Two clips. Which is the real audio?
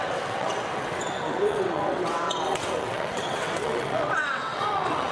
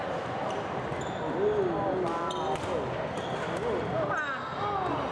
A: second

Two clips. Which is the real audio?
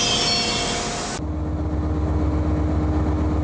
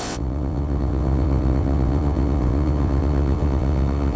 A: first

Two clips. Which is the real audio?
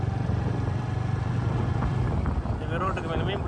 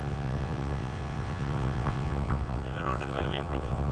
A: first